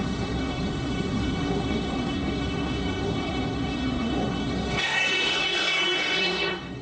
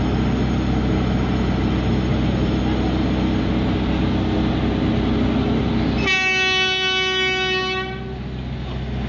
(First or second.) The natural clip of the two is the second